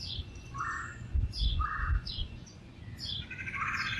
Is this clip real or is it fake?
fake